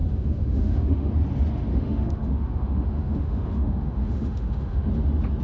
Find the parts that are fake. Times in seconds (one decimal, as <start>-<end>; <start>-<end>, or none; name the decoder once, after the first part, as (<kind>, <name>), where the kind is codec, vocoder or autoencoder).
0.0-1.1 (autoencoder, DAC-VAE); 1.7-4.9